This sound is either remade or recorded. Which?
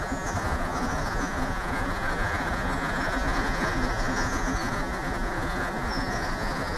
remade